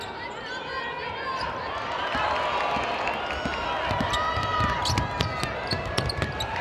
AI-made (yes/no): no